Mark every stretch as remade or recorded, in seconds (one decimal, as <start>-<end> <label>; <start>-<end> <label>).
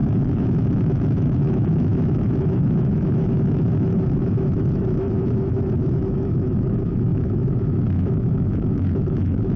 0.0-9.6 remade